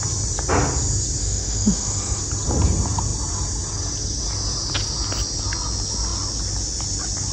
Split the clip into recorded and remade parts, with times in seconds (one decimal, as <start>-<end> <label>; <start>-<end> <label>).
0.0-1.2 recorded; 1.2-2.2 remade; 2.2-7.3 recorded